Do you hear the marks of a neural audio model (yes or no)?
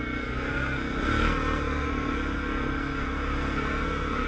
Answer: yes